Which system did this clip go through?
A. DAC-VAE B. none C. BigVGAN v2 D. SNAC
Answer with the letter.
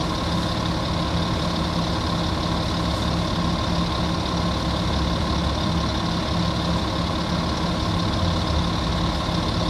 B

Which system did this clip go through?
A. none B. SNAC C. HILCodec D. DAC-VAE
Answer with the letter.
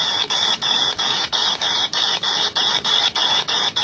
D